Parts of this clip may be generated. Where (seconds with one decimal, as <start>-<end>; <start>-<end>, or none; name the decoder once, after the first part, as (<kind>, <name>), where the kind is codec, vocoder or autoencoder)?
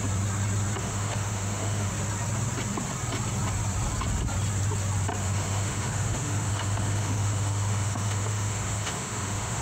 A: 0.8-1.9 (autoencoder, DAC-VAE); 5.2-9.6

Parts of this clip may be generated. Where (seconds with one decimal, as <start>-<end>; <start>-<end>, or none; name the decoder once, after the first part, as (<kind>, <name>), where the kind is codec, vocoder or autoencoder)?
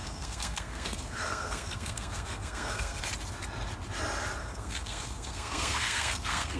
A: 0.0-3.0 (codec, SNAC); 4.4-6.6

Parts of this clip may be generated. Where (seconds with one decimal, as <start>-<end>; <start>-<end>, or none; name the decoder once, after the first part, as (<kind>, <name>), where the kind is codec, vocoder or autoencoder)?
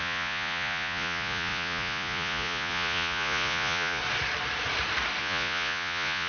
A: 0.0-4.0 (vocoder, Vocos); 5.2-6.3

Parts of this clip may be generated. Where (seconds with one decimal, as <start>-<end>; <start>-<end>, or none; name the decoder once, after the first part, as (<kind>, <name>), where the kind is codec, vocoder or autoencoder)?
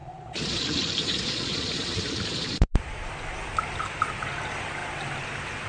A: 0.0-0.6 (vocoder, Vocos); 1.0-2.7